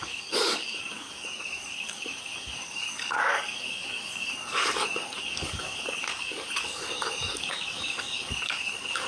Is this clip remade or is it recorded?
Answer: remade